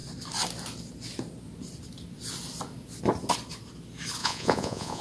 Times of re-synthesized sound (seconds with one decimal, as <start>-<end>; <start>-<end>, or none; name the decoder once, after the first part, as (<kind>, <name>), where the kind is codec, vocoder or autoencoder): 4.2-5.0 (vocoder, Vocos)

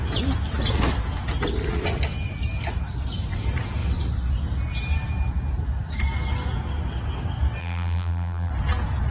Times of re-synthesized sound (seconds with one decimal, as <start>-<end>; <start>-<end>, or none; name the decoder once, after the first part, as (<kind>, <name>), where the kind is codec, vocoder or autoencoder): 7.6-8.5 (vocoder, BigVGAN v2)

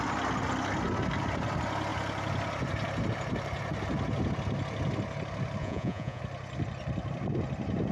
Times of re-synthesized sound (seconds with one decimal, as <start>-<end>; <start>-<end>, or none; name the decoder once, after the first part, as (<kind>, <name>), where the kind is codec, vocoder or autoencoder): 5.6-6.2 (vocoder, Vocos)

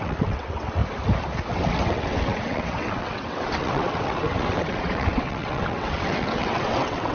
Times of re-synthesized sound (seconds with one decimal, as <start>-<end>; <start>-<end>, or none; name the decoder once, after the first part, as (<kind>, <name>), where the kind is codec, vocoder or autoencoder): 0.0-0.8 (vocoder, WaveNeXt); 1.5-7.1

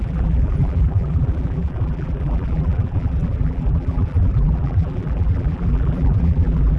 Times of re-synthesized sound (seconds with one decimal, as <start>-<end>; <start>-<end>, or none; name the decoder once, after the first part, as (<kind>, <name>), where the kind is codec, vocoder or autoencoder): 0.0-6.8 (vocoder, BigVGAN v2)

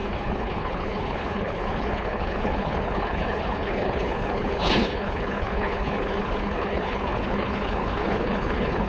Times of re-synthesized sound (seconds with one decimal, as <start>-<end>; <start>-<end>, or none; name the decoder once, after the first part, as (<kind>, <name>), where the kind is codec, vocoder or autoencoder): 0.0-8.9 (codec, HILCodec)